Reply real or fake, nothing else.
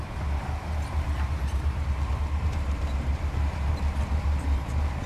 fake